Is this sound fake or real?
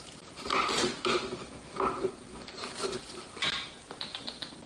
real